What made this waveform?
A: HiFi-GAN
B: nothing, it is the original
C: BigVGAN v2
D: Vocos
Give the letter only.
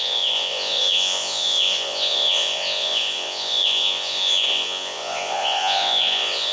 D